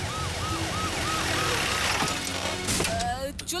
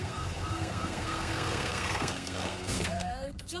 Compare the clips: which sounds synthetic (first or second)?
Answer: second